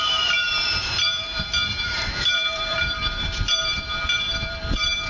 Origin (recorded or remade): remade